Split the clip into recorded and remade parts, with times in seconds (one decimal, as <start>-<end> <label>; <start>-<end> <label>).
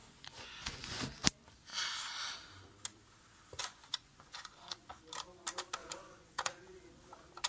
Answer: 0.0-1.0 remade; 1.0-3.6 recorded; 3.6-4.9 remade; 4.9-5.8 recorded; 5.8-7.0 remade; 7.0-7.5 recorded